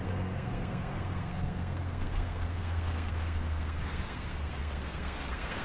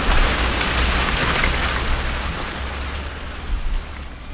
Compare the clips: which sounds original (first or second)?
second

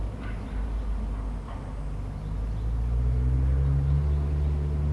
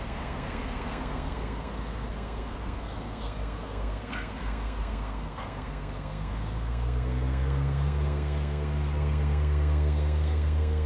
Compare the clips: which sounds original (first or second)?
first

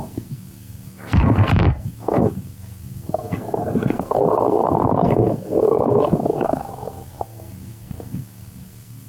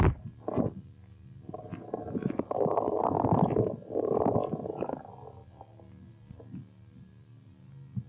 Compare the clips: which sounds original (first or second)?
second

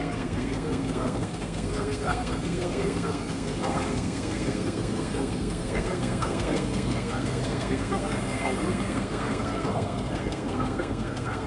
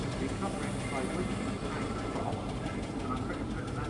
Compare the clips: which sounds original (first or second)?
second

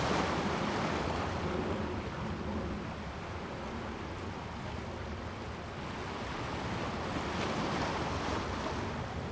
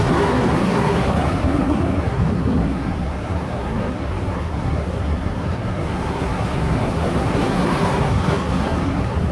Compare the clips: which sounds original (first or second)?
first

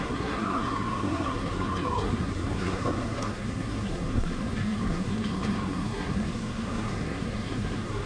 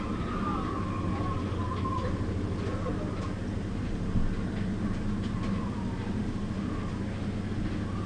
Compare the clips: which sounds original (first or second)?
second